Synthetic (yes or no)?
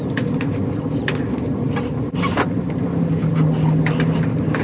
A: no